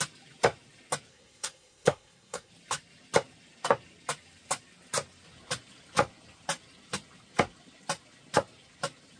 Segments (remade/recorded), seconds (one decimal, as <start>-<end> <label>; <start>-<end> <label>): 0.0-1.1 recorded; 1.1-2.5 remade; 2.5-9.2 recorded